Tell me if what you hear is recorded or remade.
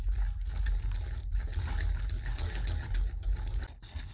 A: recorded